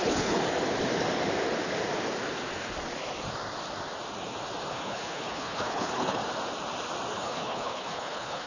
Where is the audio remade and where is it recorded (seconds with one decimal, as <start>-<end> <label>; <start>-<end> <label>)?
0.0-0.4 remade; 0.4-4.7 recorded; 4.7-6.2 remade; 6.2-7.1 recorded; 7.1-8.5 remade